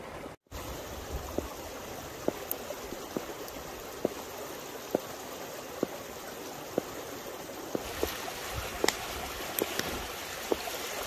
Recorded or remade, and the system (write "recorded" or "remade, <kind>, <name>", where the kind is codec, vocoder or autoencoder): recorded